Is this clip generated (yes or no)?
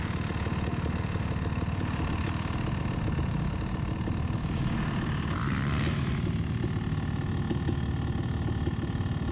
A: no